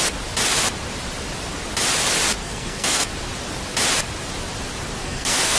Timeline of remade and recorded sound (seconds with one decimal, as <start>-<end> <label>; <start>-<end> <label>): 0.0-2.4 recorded; 2.4-3.1 remade; 3.1-5.0 recorded; 5.0-5.6 remade